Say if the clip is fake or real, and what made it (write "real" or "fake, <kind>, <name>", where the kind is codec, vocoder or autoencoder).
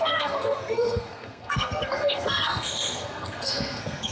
fake, codec, SNAC